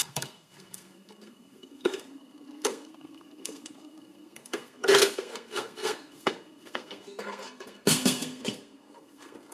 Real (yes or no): no